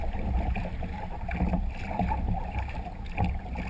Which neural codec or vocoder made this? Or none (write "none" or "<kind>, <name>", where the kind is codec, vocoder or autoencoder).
none